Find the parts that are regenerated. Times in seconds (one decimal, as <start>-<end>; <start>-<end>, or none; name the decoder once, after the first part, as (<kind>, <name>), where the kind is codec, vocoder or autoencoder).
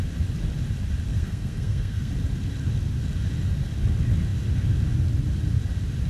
1.1-2.1 (codec, SNAC)